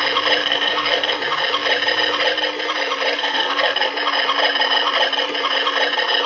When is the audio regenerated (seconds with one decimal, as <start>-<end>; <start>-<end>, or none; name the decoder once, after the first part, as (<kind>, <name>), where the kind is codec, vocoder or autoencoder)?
0.4-1.2 (codec, SNAC); 3.1-3.9